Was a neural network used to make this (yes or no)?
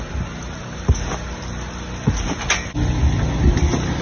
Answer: no